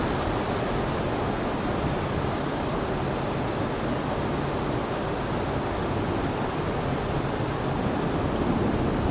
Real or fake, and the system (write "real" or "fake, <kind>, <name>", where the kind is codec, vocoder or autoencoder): real